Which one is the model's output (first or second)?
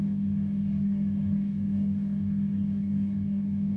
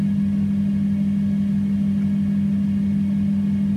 first